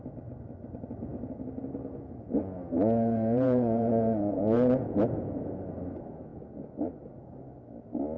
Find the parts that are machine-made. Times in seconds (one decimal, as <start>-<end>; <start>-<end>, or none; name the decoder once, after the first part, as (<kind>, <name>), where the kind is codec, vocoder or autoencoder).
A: 1.1-5.5 (vocoder, Vocos); 6.3-7.2